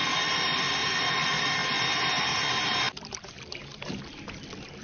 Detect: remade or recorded recorded